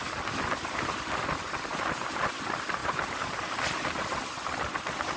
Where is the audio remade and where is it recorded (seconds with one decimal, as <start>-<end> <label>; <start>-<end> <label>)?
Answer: 0.0-5.2 recorded